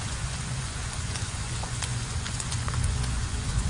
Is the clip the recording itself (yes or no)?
no